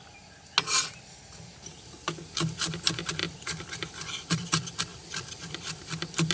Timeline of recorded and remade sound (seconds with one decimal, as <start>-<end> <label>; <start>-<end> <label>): 0.0-3.2 recorded; 3.2-4.3 remade; 4.3-4.9 recorded; 4.9-5.7 remade; 5.7-6.3 recorded